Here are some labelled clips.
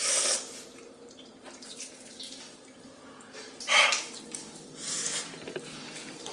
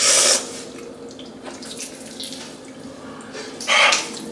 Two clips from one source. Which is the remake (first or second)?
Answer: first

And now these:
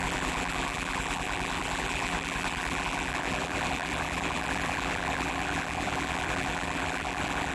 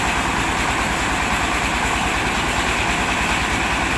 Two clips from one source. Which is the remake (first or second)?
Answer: first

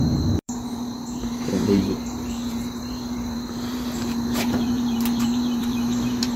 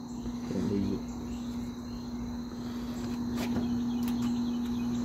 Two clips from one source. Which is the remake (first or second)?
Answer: first